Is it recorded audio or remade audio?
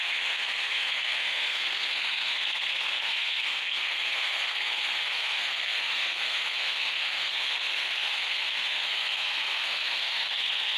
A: remade